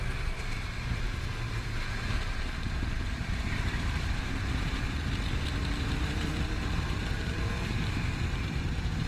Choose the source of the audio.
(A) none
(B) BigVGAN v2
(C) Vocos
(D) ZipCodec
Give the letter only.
B